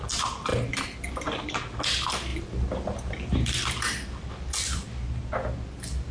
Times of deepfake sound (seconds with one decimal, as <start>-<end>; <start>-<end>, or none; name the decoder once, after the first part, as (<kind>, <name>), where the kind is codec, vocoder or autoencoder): 2.3-5.2 (vocoder, BigVGAN v2)